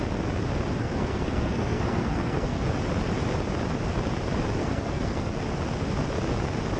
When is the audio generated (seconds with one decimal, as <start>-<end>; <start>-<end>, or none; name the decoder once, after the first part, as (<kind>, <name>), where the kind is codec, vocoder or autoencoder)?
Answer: 0.8-2.6 (codec, SNAC); 4.6-5.3